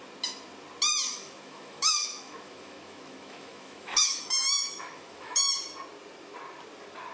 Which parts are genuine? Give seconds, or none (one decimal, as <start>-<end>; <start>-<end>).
0.0-1.1; 5.4-7.1